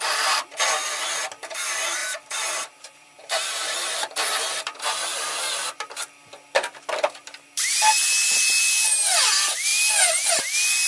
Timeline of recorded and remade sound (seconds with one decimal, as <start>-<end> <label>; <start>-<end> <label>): 0.0-2.0 recorded; 2.0-4.1 remade; 4.1-10.9 recorded